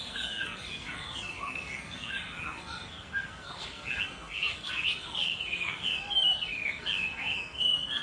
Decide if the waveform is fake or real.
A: fake